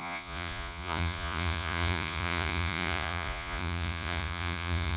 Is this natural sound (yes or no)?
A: no